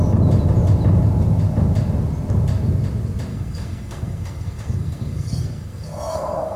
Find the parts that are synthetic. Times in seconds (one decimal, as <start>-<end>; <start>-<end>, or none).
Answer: 3.3-6.6

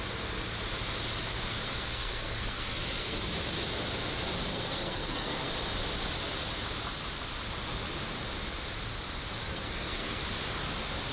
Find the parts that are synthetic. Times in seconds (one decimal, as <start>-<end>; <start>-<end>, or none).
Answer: 1.5-3.3; 4.5-5.5; 9.4-10.2

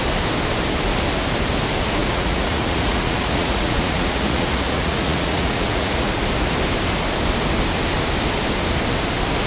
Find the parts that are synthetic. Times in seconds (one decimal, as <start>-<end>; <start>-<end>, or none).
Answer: 2.0-6.1

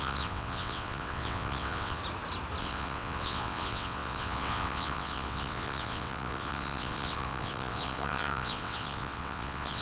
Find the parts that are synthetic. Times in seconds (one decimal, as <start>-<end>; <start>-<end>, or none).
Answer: 0.0-2.0; 2.6-9.8

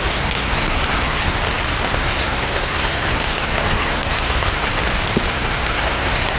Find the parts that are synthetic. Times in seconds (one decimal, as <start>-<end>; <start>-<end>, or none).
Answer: 0.0-1.3; 1.9-4.7; 5.3-6.4

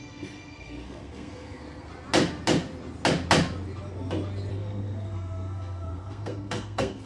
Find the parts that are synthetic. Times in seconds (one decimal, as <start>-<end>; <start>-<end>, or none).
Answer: 0.0-1.9; 4.5-7.1

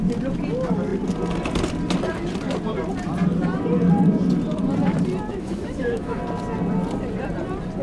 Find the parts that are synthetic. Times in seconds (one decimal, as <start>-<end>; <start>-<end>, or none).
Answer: 5.3-6.2